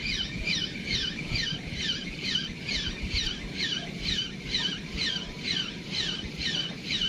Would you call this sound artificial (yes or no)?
yes